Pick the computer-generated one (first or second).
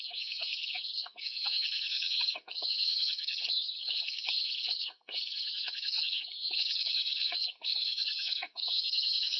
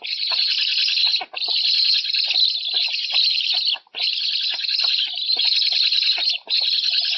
first